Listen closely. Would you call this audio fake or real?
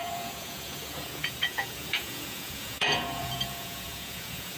fake